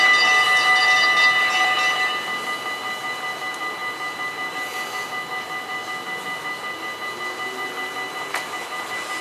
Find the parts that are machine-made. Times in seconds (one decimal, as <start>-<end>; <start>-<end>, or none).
none